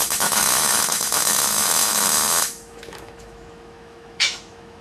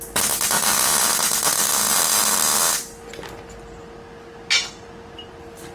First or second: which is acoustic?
second